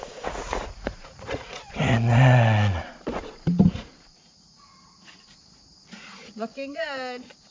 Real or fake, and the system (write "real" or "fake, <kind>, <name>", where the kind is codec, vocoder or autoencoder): fake, vocoder, Vocos